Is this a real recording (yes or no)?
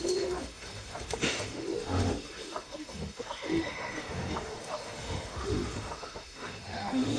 no